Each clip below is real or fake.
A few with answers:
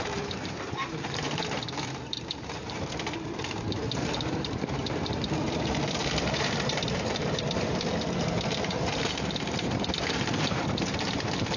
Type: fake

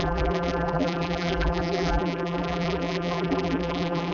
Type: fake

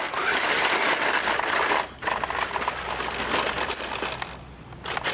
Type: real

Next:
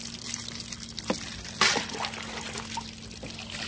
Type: real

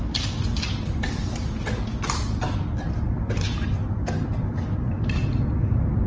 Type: real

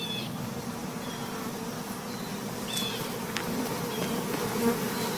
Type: real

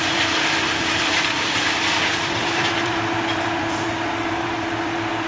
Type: fake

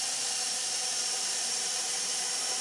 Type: fake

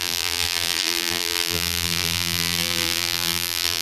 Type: fake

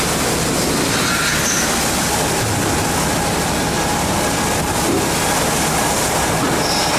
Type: real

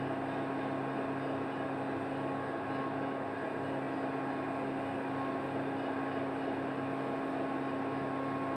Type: real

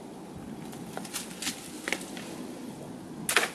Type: real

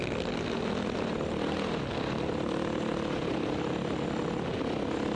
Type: real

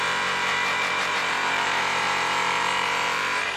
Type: fake